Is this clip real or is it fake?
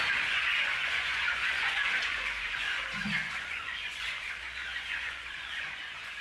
fake